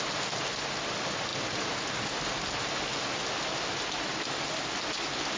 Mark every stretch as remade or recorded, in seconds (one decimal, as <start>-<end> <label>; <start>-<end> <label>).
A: 0.0-5.4 recorded